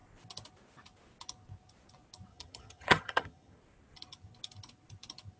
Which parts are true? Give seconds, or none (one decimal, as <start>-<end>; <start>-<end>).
0.0-2.3; 3.6-5.4